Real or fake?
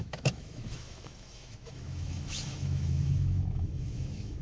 fake